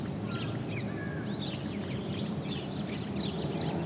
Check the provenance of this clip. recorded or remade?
recorded